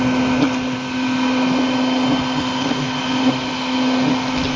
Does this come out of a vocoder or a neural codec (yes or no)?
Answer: no